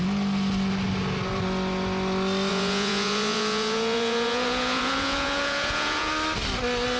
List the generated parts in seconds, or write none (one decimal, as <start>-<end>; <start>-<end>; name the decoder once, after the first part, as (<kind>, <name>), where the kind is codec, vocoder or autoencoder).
2.5-6.1 (vocoder, Vocos)